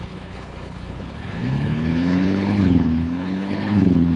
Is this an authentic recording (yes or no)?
no